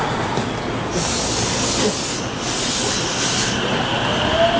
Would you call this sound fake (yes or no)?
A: no